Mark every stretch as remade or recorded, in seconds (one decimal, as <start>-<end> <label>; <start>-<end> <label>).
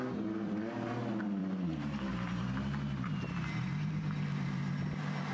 0.0-1.4 recorded; 1.4-2.1 remade; 2.1-5.3 recorded